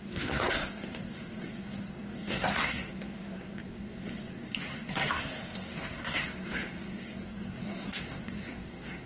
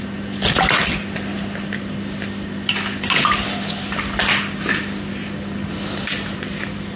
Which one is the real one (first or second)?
second